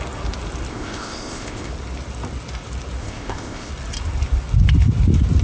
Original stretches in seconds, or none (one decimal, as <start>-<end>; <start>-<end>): 0.0-0.7; 1.7-3.0; 3.7-5.4